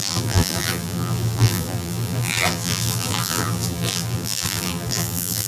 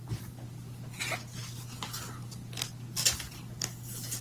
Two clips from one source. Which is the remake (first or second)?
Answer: first